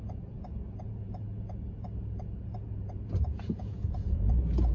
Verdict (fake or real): fake